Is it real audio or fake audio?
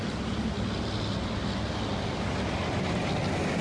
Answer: real